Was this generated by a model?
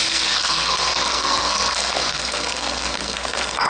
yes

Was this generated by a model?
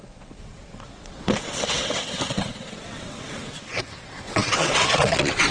yes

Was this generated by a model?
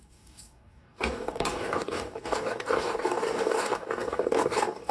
yes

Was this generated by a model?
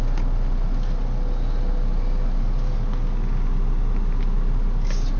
no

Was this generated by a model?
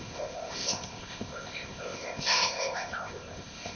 yes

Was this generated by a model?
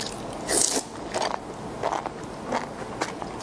no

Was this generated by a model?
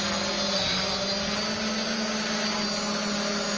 no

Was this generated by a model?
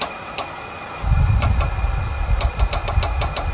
no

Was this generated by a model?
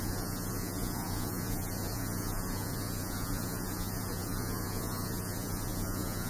yes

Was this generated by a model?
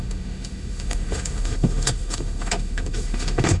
yes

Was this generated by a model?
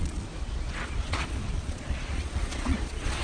yes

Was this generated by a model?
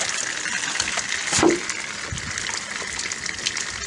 no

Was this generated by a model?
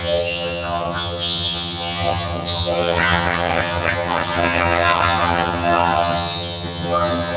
yes